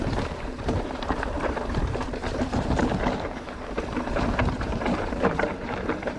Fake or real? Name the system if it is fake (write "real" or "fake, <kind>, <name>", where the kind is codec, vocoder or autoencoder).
fake, vocoder, BigVGAN v2